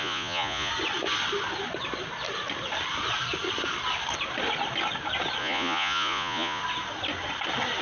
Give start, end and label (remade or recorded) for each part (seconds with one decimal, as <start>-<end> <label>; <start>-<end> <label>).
0.0-0.7 remade; 0.7-5.4 recorded; 5.4-6.6 remade; 6.6-7.8 recorded